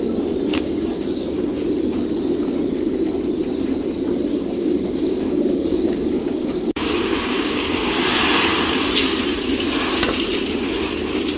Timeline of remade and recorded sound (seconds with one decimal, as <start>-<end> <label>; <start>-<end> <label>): 0.0-0.5 recorded; 0.5-1.6 remade; 1.6-4.3 recorded; 4.3-8.2 remade; 8.2-11.4 recorded